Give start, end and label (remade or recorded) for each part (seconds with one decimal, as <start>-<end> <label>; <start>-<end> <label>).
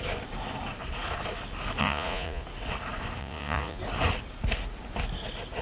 0.0-1.8 recorded; 1.8-2.4 remade; 2.4-3.2 recorded; 3.2-3.8 remade; 3.8-5.6 recorded